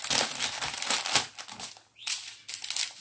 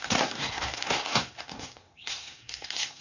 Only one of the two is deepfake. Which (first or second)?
second